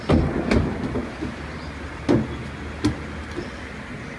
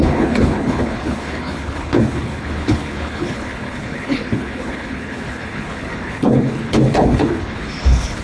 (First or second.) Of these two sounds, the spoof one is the second